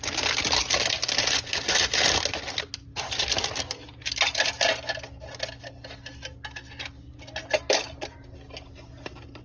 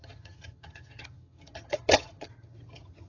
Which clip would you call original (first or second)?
first